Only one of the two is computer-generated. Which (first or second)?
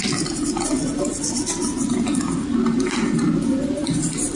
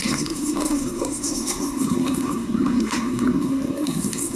second